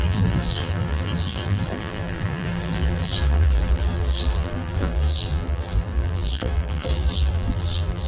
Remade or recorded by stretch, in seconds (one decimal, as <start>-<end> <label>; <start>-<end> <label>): 0.0-8.1 remade